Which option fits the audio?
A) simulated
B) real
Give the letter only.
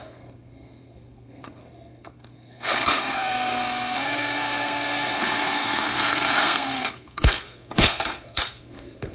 A